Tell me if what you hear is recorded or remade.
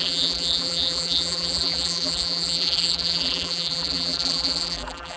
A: remade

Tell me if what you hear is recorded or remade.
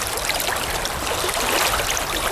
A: recorded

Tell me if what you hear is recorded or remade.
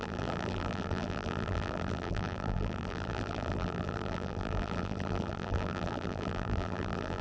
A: remade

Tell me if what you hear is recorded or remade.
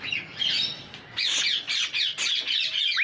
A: recorded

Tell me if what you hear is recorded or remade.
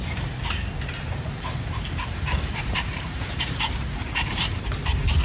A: remade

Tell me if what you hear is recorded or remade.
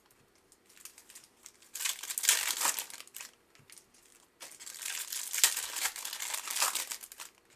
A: recorded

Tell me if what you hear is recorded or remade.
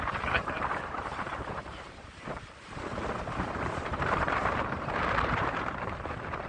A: remade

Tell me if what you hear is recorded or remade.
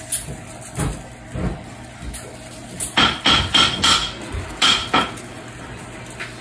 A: recorded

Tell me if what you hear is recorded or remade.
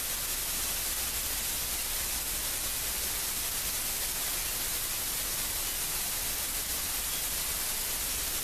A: recorded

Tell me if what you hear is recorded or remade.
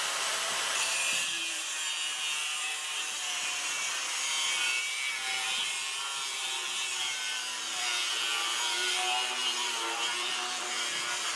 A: remade